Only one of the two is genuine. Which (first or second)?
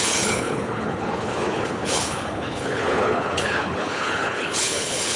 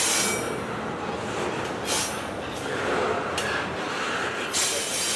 second